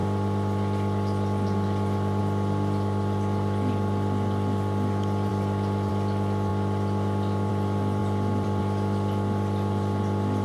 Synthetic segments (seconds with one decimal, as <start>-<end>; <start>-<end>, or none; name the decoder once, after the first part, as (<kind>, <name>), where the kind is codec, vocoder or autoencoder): 8.0-8.6 (vocoder, BigVGAN v2)